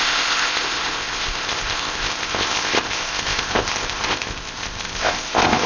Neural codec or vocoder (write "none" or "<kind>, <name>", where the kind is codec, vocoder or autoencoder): codec, ZipCodec